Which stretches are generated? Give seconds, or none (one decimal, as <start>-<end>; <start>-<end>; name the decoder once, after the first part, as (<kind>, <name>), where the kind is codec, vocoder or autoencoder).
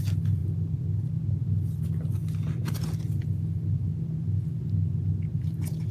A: none